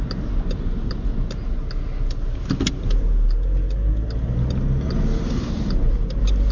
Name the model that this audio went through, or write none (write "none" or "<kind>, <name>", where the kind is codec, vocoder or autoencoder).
none